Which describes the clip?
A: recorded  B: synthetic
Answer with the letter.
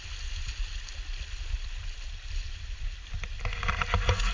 A